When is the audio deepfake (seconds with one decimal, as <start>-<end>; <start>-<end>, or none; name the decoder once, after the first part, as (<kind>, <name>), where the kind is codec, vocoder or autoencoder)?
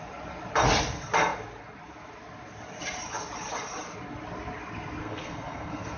5.0-6.0 (codec, SNAC)